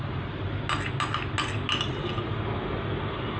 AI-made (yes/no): no